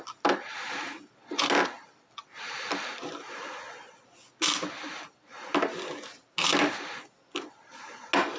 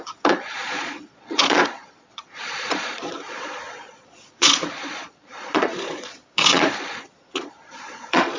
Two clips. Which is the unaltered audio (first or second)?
first